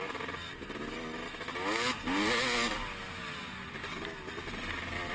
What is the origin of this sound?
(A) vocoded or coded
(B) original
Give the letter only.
B